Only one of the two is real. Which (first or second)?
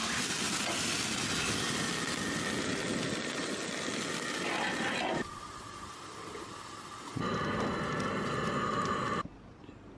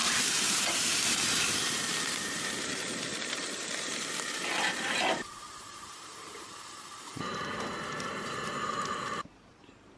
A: first